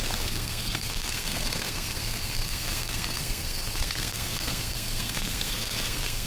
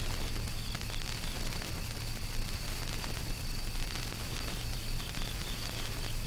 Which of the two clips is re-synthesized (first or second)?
first